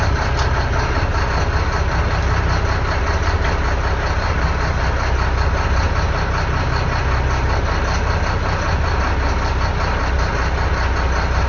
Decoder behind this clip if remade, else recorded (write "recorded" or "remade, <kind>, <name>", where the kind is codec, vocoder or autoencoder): recorded